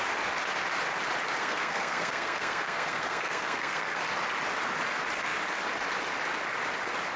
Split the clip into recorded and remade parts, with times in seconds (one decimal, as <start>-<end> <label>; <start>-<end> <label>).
0.0-1.4 recorded; 1.4-4.0 remade; 4.0-7.2 recorded